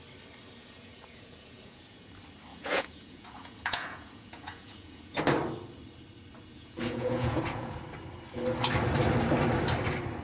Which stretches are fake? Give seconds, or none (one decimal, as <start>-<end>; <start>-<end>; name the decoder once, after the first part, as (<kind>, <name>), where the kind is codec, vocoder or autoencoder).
0.6-2.1 (vocoder, Vocos); 2.5-5.2; 6.5-7.8